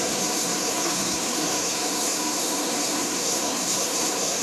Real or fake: fake